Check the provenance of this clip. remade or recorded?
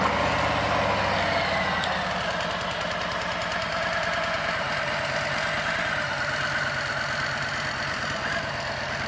recorded